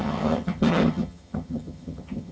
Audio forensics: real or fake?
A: fake